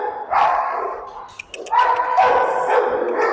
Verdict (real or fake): real